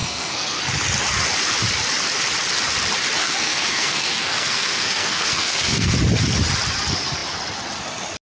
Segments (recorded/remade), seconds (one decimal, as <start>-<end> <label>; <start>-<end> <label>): 0.0-0.6 remade; 0.6-3.2 recorded; 3.2-5.9 remade; 5.9-8.3 recorded